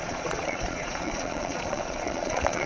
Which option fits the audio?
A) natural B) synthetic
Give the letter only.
B